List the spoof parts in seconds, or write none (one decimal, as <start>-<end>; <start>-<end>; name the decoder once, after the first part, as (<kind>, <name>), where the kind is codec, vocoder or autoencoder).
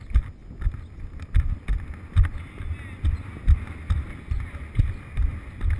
none